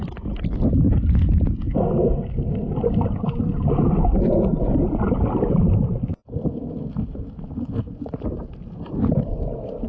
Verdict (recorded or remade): recorded